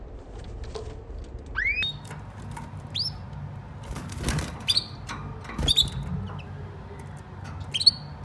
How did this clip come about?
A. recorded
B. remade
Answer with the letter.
A